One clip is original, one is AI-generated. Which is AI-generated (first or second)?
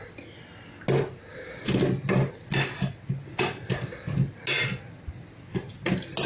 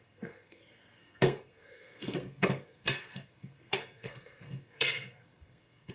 second